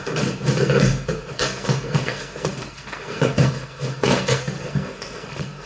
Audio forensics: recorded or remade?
remade